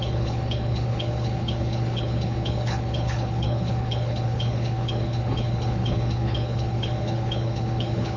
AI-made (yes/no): yes